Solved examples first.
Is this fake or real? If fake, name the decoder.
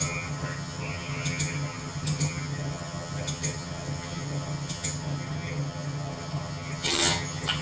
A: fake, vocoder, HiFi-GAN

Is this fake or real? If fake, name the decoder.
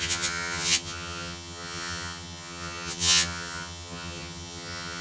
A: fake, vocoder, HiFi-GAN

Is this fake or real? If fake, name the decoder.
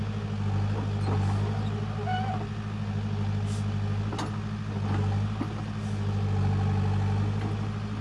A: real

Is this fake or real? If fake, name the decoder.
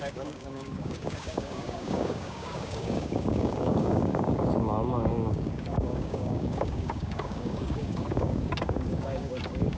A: fake, codec, DAC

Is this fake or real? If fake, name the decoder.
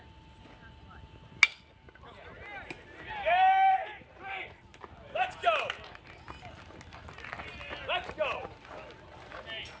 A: real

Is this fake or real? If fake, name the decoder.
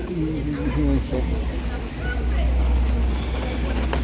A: real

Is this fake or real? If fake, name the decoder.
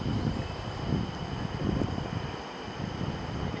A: real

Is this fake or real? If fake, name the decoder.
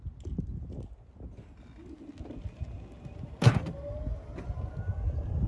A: real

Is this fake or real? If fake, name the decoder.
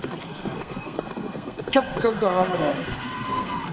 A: fake, codec, SNAC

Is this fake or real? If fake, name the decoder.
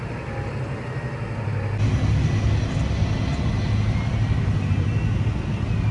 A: real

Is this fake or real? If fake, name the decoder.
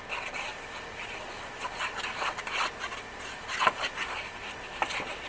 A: real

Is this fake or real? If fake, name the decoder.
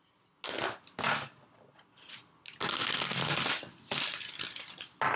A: real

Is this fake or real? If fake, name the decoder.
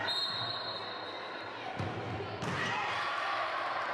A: real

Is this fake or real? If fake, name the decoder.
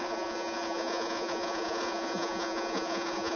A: fake, vocoder, Vocos